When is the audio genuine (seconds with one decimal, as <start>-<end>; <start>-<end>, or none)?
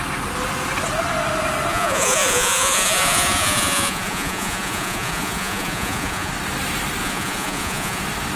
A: 0.0-1.7; 6.3-7.0; 8.0-8.4